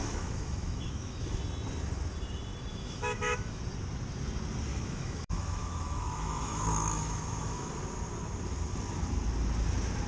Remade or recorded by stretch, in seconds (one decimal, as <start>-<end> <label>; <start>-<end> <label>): 0.0-1.4 remade; 1.4-2.7 recorded; 2.7-3.6 remade; 3.6-4.7 recorded; 4.7-7.7 remade; 7.7-10.1 recorded